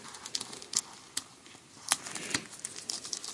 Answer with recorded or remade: recorded